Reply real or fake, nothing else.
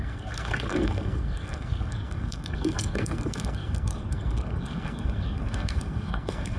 fake